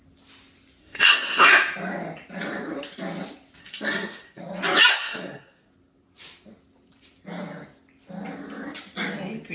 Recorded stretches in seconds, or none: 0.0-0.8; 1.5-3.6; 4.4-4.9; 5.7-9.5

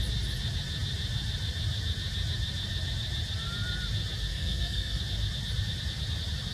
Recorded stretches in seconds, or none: 0.0-4.3; 5.0-6.5

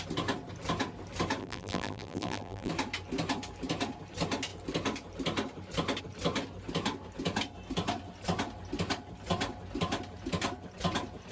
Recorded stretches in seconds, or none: 0.0-1.4; 2.7-11.3

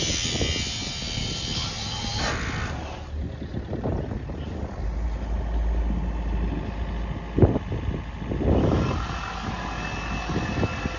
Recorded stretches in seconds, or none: 0.0-11.0

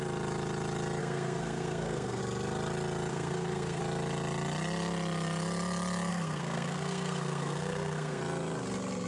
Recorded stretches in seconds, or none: 0.0-1.0; 2.2-3.1; 3.8-6.1; 8.2-9.1

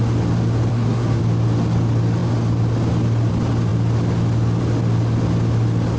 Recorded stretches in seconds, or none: 0.0-0.7; 1.2-6.0

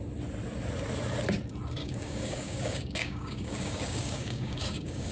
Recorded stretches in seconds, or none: 0.0-1.8